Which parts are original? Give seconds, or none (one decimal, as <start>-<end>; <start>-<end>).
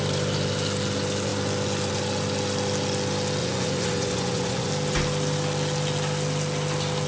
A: 0.0-3.4; 4.7-7.1